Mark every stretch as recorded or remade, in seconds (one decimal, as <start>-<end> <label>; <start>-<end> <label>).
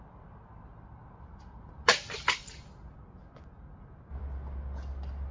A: 0.0-5.3 recorded